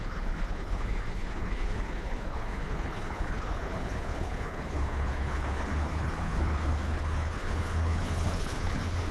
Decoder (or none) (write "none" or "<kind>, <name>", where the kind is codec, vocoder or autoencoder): codec, HILCodec